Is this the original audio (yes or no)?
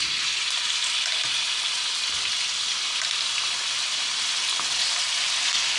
yes